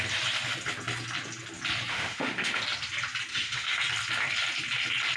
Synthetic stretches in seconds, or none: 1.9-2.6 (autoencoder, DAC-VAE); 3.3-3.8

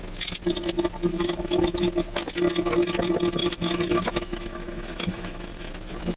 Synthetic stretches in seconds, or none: 1.1-1.9 (autoencoder, DAC-VAE); 3.4-5.7

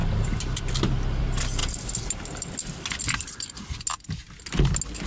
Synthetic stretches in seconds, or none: none

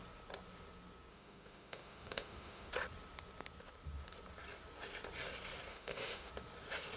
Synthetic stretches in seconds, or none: 1.1-2.7 (autoencoder, DAC-VAE); 5.7-6.3

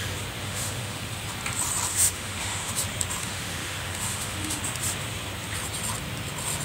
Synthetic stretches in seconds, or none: 0.4-1.1 (autoencoder, DAC-VAE); 1.9-2.7; 3.2-4.6

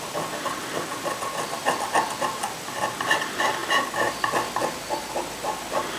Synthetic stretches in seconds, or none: none

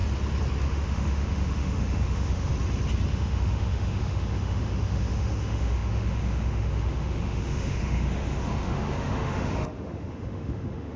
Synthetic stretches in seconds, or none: 0.7-2.5 (autoencoder, DAC-VAE); 3.1-11.0

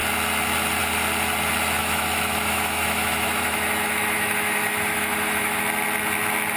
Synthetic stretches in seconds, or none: 1.8-5.6 (autoencoder, DAC-VAE)